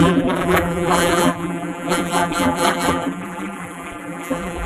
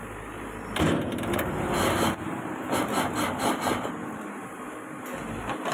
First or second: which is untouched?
second